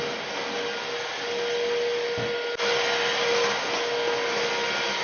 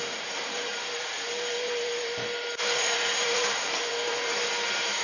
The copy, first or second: second